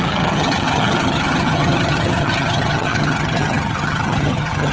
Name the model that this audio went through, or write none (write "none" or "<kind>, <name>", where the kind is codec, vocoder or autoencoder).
vocoder, HiFi-GAN